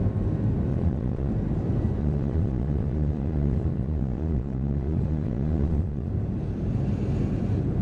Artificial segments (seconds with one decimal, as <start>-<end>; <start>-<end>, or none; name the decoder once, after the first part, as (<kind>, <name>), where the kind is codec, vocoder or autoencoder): 0.7-1.3 (vocoder, Vocos); 2.0-6.1